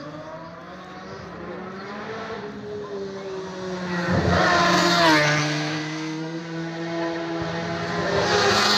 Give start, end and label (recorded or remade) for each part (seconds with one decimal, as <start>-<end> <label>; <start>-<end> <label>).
0.0-5.4 recorded; 5.4-6.4 remade; 6.4-8.8 recorded